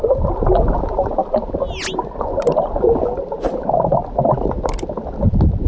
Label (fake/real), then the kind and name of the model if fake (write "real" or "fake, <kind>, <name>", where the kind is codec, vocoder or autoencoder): real